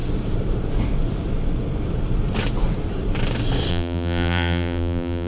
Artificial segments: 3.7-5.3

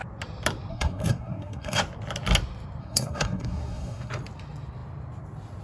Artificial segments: 0.7-1.8; 2.8-4.1

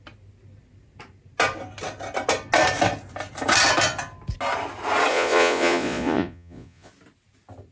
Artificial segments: 5.1-6.9

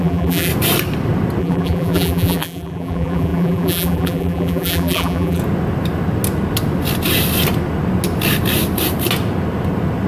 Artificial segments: 0.0-0.5; 1.4-5.4

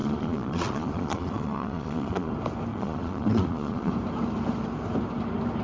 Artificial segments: 0.0-2.3; 2.7-3.9